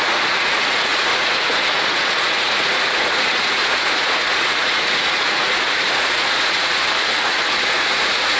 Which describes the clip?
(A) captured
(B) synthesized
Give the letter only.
B